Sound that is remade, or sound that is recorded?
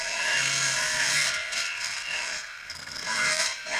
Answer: remade